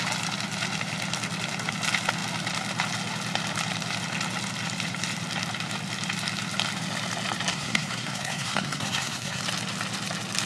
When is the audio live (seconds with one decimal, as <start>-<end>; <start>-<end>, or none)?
0.0-7.5; 9.4-10.5